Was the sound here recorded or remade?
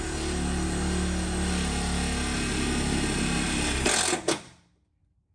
recorded